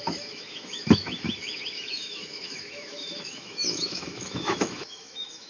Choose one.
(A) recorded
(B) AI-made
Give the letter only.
B